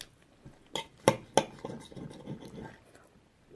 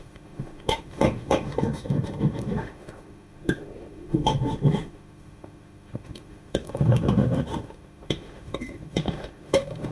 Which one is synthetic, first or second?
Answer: second